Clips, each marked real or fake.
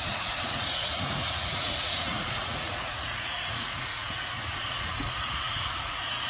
fake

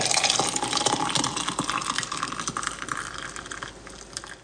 real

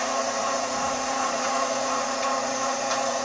fake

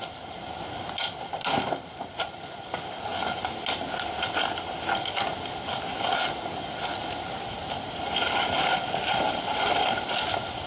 real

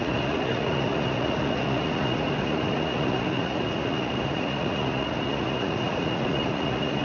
fake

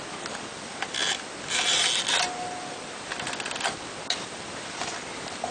real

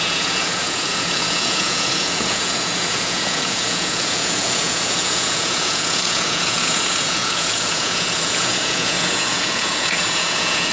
fake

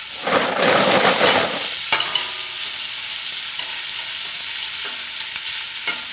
real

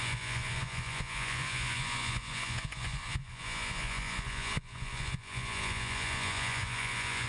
fake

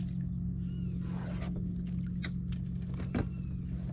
real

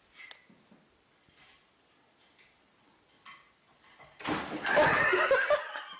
real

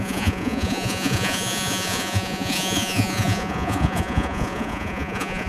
fake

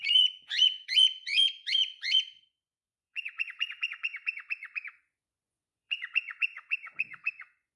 fake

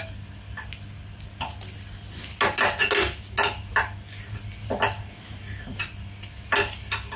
real